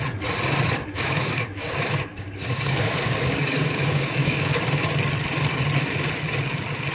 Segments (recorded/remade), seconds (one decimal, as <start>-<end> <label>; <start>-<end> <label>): 0.0-0.8 recorded; 0.8-4.9 remade; 4.9-6.9 recorded